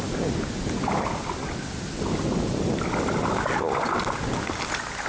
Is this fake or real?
real